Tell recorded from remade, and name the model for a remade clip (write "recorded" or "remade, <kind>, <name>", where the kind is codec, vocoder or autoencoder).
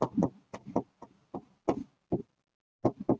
recorded